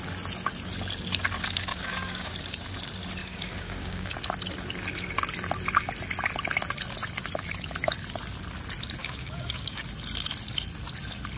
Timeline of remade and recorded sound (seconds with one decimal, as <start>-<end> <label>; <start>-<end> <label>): 0.0-1.7 recorded; 1.7-2.3 remade; 2.3-3.2 recorded; 3.2-4.1 remade; 4.1-9.0 recorded; 9.0-9.8 remade; 9.8-11.4 recorded